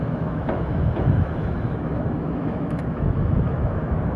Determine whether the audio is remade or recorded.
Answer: remade